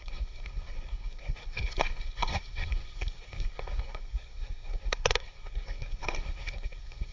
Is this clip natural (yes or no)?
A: no